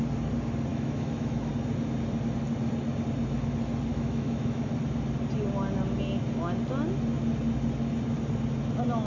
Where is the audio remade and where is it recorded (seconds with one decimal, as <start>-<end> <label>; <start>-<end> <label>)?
0.0-0.7 recorded; 0.7-1.5 remade; 1.5-3.9 recorded; 3.9-4.7 remade; 4.7-9.1 recorded